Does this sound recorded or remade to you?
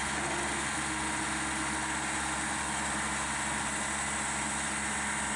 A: recorded